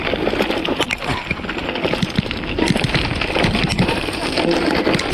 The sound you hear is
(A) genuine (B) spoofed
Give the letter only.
A